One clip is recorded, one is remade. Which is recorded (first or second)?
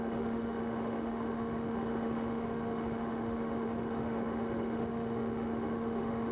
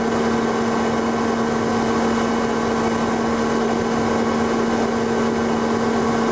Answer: second